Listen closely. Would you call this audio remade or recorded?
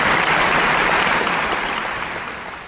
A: recorded